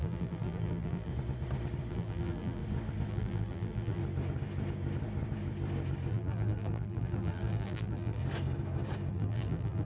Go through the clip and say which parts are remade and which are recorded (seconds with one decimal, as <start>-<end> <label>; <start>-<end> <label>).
0.0-1.1 remade; 1.1-1.9 recorded; 1.9-2.6 remade; 2.6-3.1 recorded; 3.1-4.0 remade; 4.0-6.1 recorded; 6.1-8.2 remade; 8.2-9.1 recorded; 9.1-9.8 remade